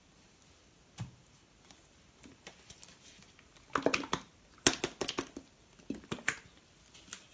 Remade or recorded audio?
recorded